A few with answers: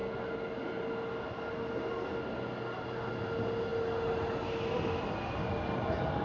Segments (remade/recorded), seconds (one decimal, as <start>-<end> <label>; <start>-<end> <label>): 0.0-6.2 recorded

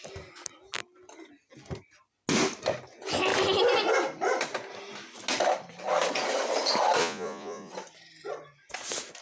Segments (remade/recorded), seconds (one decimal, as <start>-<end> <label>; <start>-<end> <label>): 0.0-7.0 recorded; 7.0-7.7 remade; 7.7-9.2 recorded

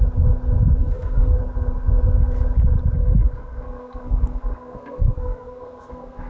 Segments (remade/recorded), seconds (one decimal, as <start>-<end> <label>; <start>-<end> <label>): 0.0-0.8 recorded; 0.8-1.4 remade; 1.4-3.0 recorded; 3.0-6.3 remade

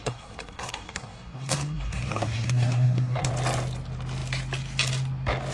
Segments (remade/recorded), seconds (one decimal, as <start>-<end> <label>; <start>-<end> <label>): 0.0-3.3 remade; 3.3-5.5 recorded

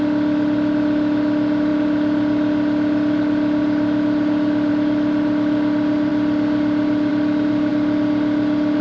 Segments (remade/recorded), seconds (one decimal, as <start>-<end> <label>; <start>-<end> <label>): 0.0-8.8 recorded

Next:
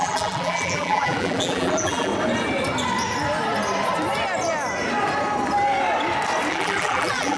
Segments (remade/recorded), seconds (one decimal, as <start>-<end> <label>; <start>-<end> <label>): 0.0-2.1 remade; 2.1-6.5 recorded; 6.5-7.4 remade